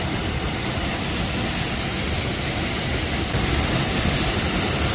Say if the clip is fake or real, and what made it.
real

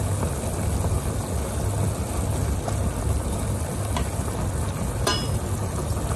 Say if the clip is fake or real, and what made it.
real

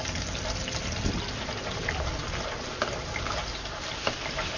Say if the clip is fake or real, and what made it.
real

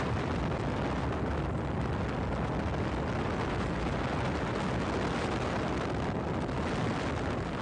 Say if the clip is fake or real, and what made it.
real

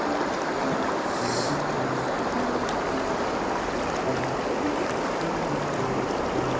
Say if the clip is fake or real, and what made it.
real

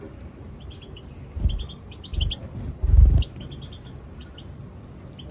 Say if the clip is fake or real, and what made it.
real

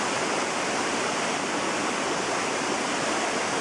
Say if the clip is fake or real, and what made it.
real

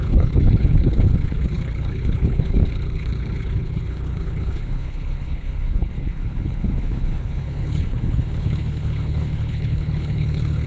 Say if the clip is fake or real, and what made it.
fake, codec, HILCodec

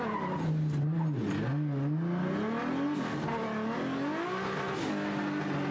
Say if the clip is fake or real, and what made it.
real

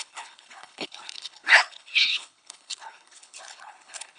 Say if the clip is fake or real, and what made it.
fake, codec, HILCodec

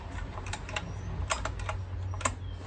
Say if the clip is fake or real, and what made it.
real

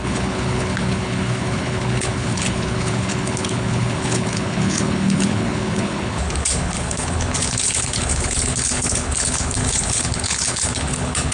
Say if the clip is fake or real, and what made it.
fake, codec, HILCodec